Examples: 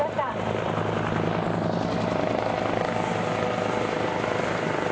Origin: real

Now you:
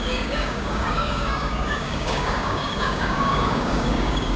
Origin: fake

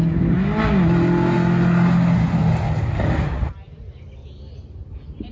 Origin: real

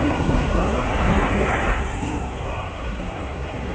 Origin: fake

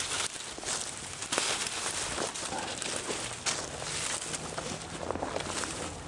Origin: real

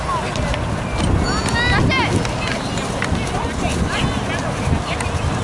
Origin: real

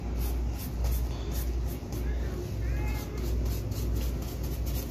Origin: real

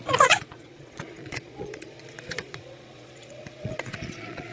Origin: fake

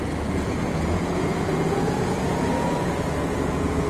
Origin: fake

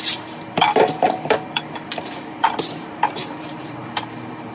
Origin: fake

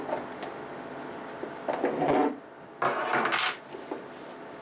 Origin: real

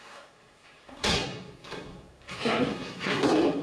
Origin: fake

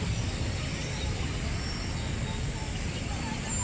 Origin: real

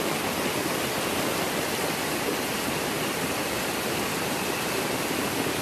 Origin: fake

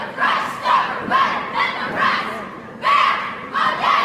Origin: fake